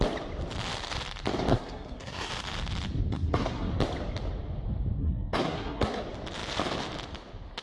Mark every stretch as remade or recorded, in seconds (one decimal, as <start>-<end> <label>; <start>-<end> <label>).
0.0-1.5 recorded; 1.5-2.3 remade; 2.3-3.1 recorded; 3.1-3.7 remade; 3.7-5.0 recorded; 5.0-6.0 remade; 6.0-7.6 recorded